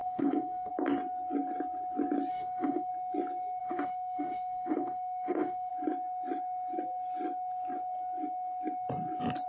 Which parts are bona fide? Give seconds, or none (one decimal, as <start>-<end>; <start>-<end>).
0.7-2.3; 2.9-3.6; 5.7-9.5

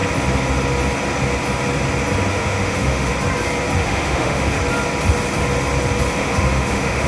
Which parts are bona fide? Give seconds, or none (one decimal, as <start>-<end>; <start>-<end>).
0.0-2.3; 3.1-3.8; 4.6-6.2